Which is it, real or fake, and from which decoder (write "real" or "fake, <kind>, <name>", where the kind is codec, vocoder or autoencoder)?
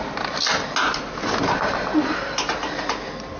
real